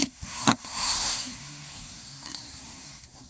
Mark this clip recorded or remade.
remade